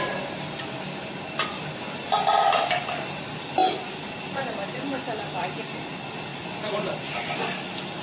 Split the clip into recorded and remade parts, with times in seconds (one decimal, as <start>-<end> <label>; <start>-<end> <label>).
0.0-6.3 recorded; 6.3-7.4 remade; 7.4-8.0 recorded